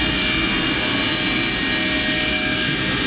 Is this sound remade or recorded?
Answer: recorded